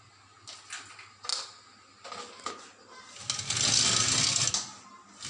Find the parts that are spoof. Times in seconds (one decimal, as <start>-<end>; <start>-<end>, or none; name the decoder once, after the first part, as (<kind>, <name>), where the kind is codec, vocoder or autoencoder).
none